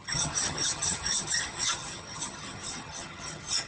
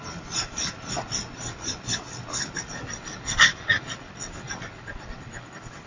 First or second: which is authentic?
second